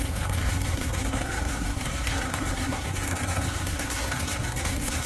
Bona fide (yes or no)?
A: no